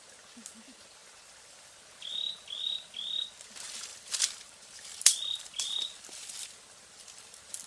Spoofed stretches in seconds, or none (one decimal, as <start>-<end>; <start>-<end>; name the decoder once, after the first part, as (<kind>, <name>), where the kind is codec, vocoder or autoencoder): 1.0-1.6 (vocoder, BigVGAN v2); 3.9-7.7